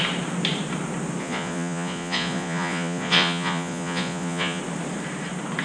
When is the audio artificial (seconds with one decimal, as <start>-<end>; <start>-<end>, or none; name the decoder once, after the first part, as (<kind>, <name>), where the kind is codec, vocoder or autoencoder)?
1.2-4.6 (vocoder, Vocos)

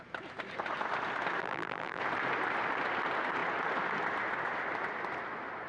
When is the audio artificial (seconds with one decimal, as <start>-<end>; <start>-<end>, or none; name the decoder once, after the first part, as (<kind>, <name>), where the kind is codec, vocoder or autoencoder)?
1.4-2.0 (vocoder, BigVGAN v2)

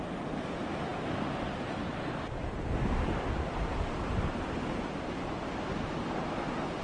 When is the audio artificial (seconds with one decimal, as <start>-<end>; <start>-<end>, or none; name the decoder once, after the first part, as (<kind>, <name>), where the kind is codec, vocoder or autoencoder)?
none

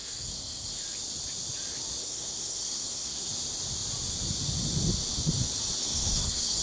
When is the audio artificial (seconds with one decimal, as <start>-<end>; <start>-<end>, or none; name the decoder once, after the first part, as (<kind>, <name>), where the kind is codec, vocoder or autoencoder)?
0.0-0.8 (codec, SNAC); 2.0-3.3; 5.8-6.6

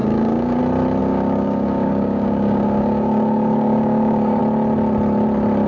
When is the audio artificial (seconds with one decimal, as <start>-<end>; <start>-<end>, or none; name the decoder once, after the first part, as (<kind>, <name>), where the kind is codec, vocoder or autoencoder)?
0.0-0.6 (codec, DAC); 1.0-4.4